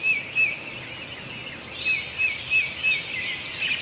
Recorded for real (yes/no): yes